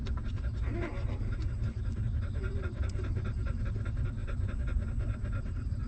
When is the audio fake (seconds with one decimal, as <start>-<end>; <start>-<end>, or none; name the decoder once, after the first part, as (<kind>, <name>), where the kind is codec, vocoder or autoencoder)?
2.6-4.2 (vocoder, BigVGAN v2); 5.4-5.9